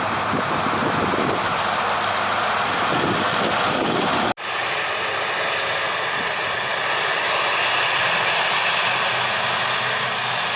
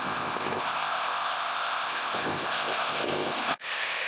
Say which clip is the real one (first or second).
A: first